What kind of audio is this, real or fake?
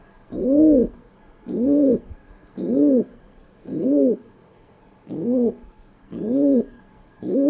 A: fake